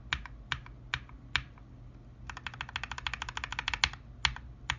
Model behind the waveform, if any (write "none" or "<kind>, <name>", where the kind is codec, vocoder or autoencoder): none